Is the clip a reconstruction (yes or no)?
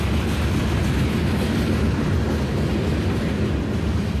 no